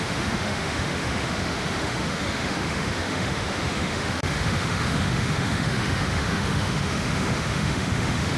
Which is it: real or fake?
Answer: fake